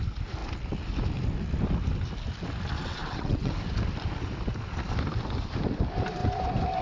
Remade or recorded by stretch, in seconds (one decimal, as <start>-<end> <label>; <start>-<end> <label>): 0.0-2.9 recorded; 2.9-3.5 remade; 3.5-6.8 recorded